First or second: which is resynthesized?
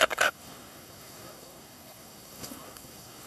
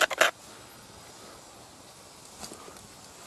first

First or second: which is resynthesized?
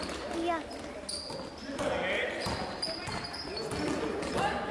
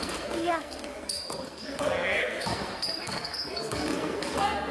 second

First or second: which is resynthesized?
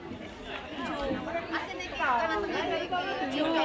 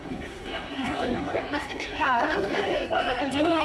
second